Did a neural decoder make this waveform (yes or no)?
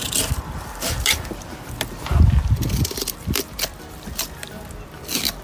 no